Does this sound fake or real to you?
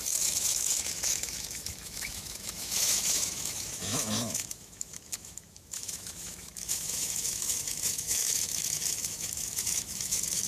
fake